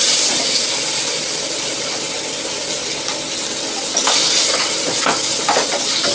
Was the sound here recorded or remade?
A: recorded